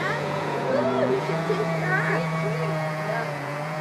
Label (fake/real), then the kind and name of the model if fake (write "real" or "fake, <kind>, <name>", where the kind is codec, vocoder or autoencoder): fake, vocoder, Vocos